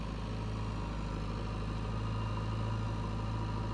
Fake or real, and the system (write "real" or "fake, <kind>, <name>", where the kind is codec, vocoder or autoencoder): real